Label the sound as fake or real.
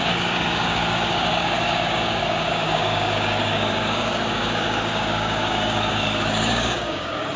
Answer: fake